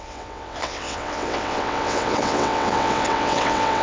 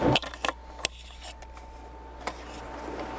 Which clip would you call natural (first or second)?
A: second